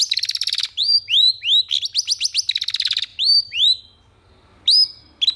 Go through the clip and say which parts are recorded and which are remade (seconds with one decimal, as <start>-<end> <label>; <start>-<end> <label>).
0.0-0.8 recorded; 0.8-1.3 remade; 1.3-3.1 recorded; 3.1-3.8 remade; 3.8-5.4 recorded